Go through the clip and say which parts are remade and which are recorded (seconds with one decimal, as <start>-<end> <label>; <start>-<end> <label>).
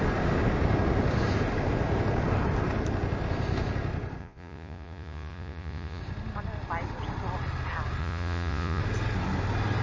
0.0-4.2 recorded; 4.2-6.0 remade; 6.0-8.0 recorded; 8.0-8.8 remade; 8.8-9.8 recorded